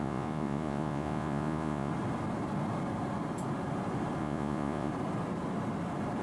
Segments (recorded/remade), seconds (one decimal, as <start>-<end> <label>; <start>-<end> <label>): 0.0-1.9 remade; 1.9-4.2 recorded; 4.2-4.9 remade; 4.9-6.2 recorded